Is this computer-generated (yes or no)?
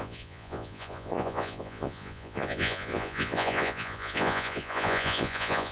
yes